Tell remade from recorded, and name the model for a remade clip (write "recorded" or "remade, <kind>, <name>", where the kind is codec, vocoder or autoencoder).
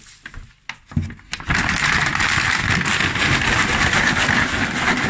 recorded